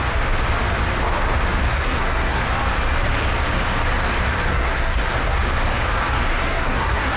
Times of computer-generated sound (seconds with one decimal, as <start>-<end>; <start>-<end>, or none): 1.7-2.4; 4.5-5.4; 6.3-7.2